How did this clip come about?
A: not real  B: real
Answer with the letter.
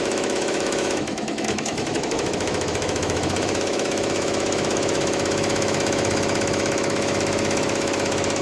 A